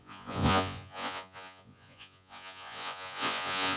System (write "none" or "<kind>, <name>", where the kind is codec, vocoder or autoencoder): vocoder, Vocos